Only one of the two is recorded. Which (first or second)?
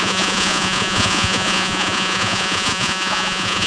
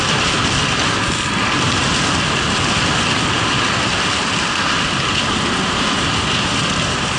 second